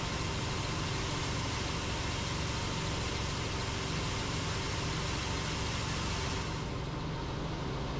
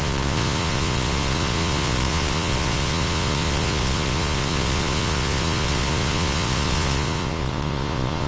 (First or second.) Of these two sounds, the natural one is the first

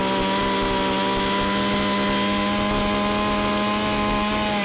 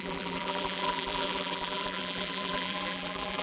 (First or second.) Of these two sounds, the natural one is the first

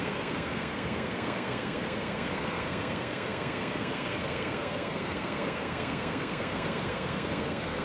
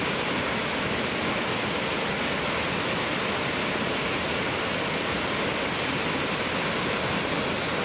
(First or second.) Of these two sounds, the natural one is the second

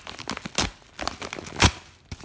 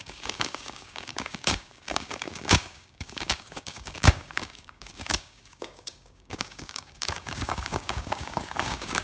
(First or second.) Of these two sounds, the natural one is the first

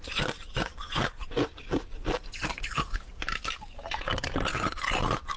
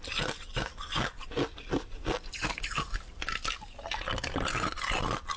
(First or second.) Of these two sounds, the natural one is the second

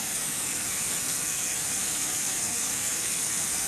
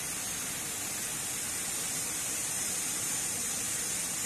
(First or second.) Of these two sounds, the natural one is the second